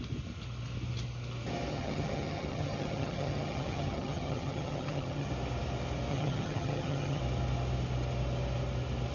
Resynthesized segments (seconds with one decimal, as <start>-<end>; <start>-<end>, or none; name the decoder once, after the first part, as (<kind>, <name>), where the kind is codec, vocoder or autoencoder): 1.7-5.3 (vocoder, HiFi-GAN); 6.1-7.2